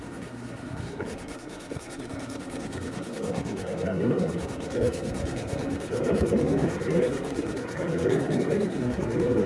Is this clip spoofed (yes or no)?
yes